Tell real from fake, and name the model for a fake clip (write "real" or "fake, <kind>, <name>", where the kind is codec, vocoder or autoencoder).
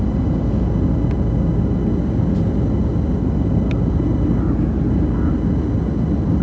real